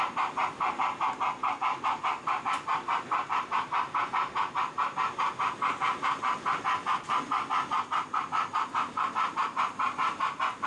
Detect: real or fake real